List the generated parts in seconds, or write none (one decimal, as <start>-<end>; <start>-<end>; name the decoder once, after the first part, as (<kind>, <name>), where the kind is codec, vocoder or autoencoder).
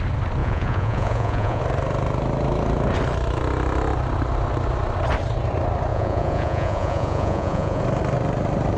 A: 0.4-1.6 (vocoder, Vocos); 5.9-7.8